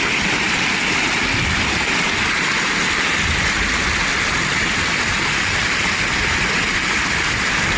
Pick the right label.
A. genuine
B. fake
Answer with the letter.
A